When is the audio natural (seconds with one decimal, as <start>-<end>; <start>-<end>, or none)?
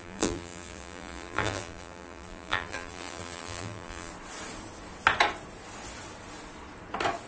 4.1-7.3